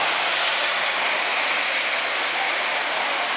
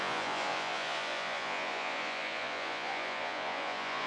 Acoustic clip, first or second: first